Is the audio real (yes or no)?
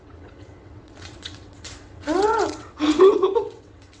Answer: no